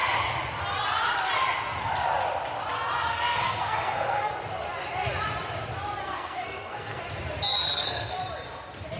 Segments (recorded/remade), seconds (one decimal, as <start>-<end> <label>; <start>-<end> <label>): 0.0-3.1 recorded; 3.1-4.3 remade; 4.3-6.0 recorded; 6.0-7.0 remade; 7.0-7.5 recorded; 7.5-8.2 remade; 8.2-9.0 recorded